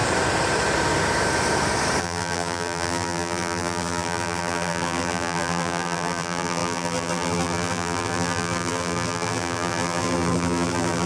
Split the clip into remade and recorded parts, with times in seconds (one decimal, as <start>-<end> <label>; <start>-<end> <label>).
0.0-2.0 recorded; 2.0-11.1 remade